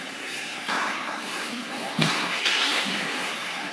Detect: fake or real fake